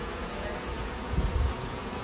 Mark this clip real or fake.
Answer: fake